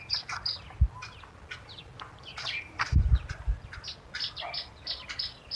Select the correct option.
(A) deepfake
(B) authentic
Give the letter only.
B